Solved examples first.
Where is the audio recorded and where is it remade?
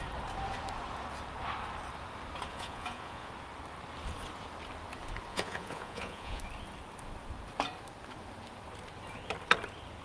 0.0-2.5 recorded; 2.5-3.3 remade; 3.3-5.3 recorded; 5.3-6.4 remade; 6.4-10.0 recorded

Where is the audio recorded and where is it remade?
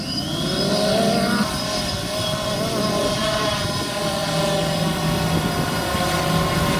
0.0-6.8 recorded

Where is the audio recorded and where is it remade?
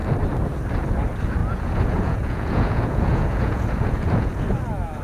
0.0-1.4 recorded; 1.4-4.4 remade; 4.4-5.0 recorded